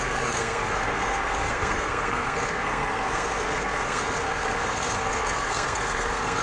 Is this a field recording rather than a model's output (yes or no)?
no